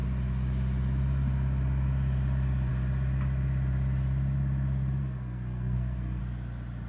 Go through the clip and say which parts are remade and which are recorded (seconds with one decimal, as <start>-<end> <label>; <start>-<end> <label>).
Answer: 0.0-5.0 recorded; 5.0-6.2 remade; 6.2-6.9 recorded